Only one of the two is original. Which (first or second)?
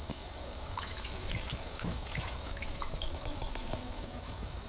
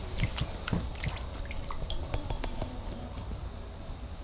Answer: second